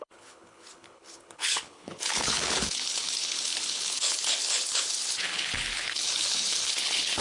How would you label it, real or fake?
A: fake